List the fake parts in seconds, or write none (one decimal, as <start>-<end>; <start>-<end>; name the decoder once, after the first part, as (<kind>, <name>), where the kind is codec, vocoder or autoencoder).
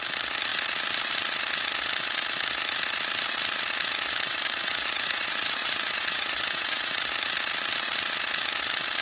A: 4.3-7.1 (vocoder, Vocos)